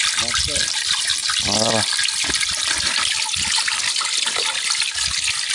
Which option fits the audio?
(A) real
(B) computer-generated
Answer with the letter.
A